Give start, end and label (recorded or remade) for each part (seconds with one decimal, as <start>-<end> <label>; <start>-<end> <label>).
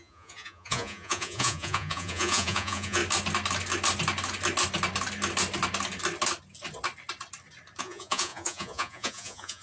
0.0-3.0 remade; 3.0-7.8 recorded; 7.8-9.6 remade